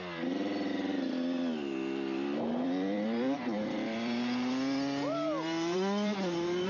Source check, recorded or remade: remade